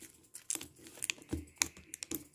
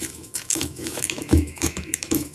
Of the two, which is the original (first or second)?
first